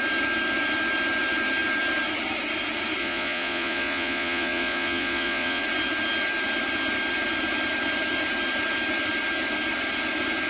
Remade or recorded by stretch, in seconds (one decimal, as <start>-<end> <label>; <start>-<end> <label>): 0.0-3.0 recorded; 3.0-5.6 remade; 5.6-10.5 recorded